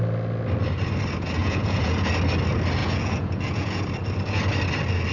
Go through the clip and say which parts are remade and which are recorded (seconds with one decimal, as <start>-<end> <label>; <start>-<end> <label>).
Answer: 0.0-1.4 recorded; 1.4-2.1 remade; 2.1-2.8 recorded; 2.8-3.8 remade; 3.8-5.1 recorded